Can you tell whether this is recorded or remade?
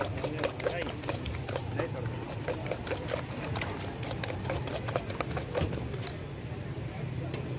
recorded